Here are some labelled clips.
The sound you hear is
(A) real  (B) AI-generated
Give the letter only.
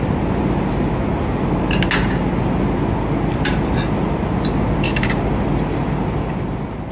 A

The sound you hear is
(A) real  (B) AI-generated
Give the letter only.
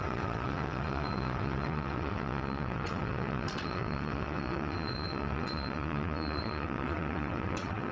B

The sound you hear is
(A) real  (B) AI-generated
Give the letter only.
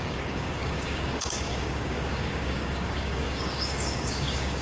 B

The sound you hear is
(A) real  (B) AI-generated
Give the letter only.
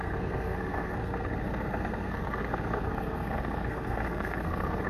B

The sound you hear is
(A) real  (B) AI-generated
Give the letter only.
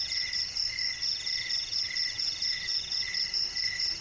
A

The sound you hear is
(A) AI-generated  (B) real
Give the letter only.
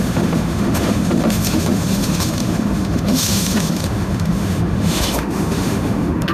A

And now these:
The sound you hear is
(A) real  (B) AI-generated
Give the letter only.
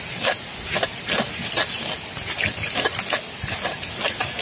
A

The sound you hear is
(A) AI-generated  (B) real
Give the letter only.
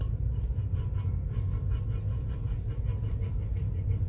B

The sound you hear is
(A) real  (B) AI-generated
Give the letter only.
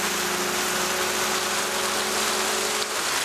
A